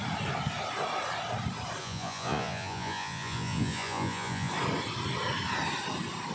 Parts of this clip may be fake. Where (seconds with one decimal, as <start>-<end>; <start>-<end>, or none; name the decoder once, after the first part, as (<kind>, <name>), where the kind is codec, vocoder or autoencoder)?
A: 1.8-4.5 (vocoder, Vocos)